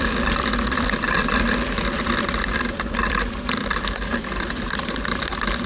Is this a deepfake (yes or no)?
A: yes